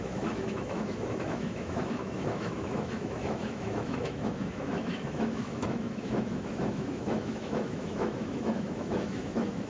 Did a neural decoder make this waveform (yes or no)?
yes